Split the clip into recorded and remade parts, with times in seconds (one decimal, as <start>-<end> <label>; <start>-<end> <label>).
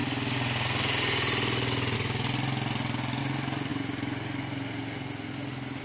0.0-5.8 recorded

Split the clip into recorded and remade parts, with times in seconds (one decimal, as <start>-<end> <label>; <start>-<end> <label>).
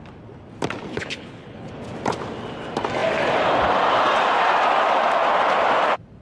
0.0-0.9 recorded; 0.9-1.7 remade; 1.7-6.2 recorded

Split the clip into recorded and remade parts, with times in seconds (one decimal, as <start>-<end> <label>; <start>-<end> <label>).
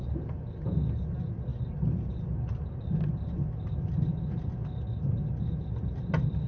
0.0-6.5 recorded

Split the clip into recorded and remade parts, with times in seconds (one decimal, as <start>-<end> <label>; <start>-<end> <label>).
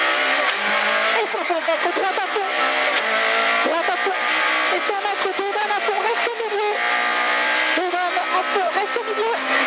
0.0-1.3 recorded; 1.3-1.8 remade; 1.8-9.7 recorded